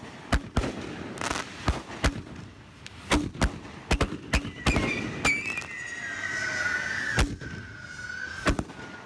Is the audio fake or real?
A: real